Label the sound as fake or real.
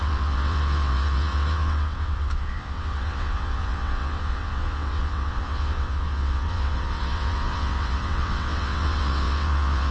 fake